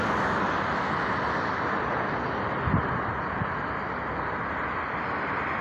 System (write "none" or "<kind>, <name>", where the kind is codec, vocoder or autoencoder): none